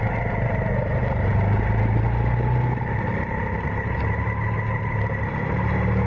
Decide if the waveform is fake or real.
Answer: real